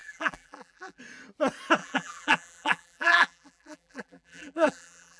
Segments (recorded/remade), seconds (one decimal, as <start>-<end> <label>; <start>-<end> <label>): 0.0-1.0 remade; 1.0-1.8 recorded; 1.8-5.2 remade